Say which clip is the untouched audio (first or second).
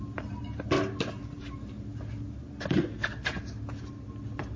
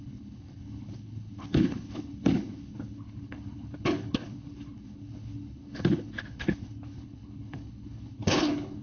first